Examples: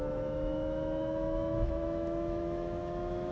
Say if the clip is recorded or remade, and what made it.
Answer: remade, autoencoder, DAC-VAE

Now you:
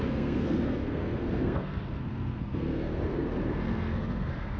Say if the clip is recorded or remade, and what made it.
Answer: remade, codec, SNAC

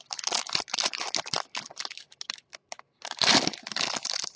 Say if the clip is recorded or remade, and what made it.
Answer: recorded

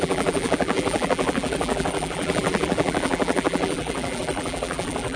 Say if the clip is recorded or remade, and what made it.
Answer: remade, vocoder, BigVGAN v2